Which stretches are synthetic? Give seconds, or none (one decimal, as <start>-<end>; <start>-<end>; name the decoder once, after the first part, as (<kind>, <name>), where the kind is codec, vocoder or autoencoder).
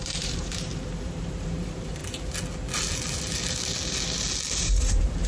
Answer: 0.0-2.0 (vocoder, BigVGAN v2); 4.6-5.3